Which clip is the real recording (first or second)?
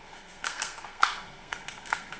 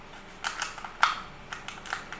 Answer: second